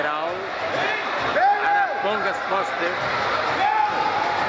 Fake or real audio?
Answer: real